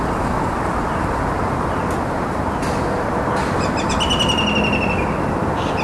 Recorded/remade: remade